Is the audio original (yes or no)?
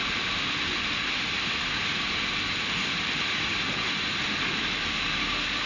yes